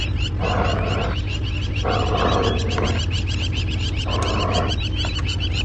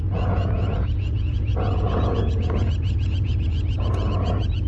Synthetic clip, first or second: second